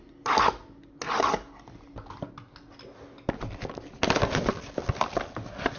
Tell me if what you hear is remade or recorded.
recorded